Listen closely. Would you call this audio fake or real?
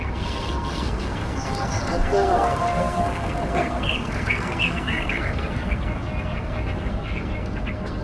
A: fake